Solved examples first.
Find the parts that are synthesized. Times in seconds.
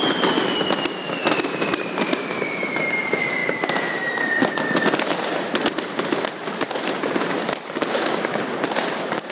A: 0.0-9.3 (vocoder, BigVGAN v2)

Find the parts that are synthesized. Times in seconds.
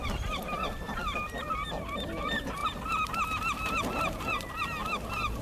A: 0.0-4.8 (vocoder, BigVGAN v2)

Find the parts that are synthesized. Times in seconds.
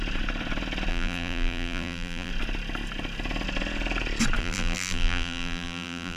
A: 0.9-2.3 (vocoder, BigVGAN v2); 4.4-6.2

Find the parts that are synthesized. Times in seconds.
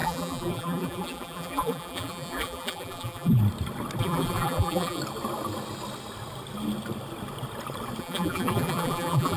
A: 0.0-3.4 (vocoder, BigVGAN v2); 4.0-5.0; 8.0-9.4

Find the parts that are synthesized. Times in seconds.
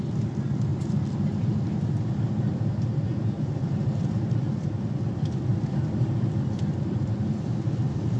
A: 0.7-4.8 (vocoder, BigVGAN v2); 5.5-8.2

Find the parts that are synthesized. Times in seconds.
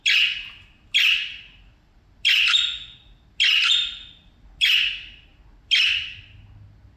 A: none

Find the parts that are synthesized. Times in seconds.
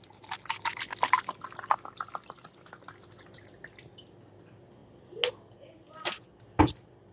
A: none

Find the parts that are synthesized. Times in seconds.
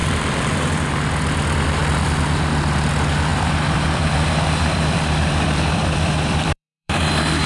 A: 0.0-0.8 (vocoder, BigVGAN v2); 3.3-7.0